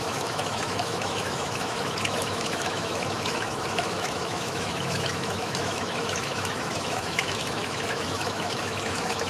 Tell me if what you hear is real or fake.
fake